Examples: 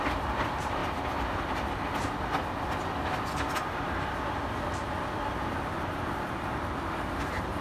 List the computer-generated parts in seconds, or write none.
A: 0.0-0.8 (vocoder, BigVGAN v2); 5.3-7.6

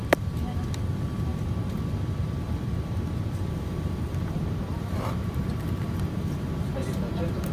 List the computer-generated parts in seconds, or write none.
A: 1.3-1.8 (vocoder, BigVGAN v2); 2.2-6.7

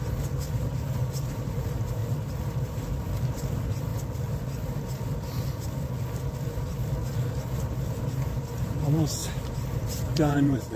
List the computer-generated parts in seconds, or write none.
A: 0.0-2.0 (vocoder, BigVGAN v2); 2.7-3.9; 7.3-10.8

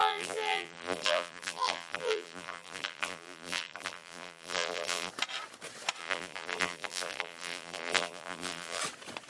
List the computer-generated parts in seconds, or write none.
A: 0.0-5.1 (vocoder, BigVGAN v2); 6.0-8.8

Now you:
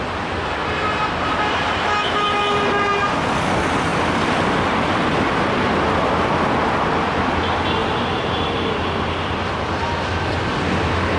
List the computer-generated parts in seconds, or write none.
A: 0.6-1.4 (vocoder, BigVGAN v2); 7.8-8.8

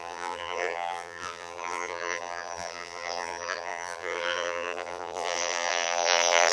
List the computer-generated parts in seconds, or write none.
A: 0.0-6.5 (vocoder, BigVGAN v2)

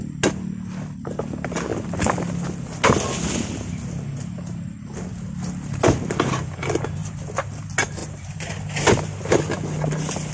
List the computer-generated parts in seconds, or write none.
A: 7.0-7.6 (vocoder, BigVGAN v2); 8.0-8.7